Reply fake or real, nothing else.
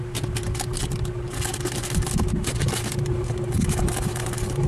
real